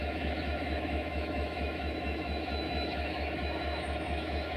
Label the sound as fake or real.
fake